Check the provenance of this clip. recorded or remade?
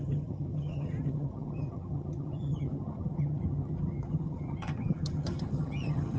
remade